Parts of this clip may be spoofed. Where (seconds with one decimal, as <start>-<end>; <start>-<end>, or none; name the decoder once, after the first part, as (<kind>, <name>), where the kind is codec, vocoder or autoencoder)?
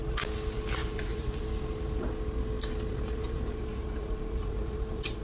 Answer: 0.8-1.4 (vocoder, BigVGAN v2); 2.9-5.2